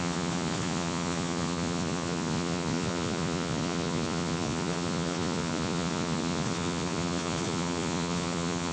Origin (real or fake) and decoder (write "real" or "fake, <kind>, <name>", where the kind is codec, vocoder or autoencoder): fake, vocoder, Vocos